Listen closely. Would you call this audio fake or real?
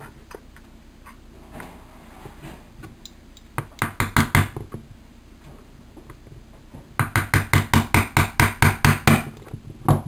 real